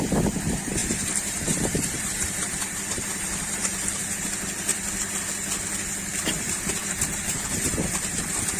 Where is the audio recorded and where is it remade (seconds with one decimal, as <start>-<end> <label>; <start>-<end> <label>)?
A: 0.0-0.8 recorded; 0.8-4.3 remade; 4.3-6.8 recorded; 6.8-8.1 remade; 8.1-8.6 recorded